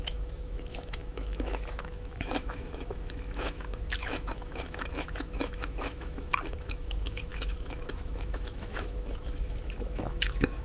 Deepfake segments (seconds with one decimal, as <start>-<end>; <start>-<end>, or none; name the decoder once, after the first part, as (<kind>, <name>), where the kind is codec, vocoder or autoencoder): 0.0-10.6 (autoencoder, DAC-VAE)